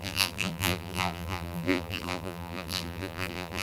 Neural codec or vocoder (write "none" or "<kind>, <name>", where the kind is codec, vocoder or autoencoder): vocoder, BigVGAN v2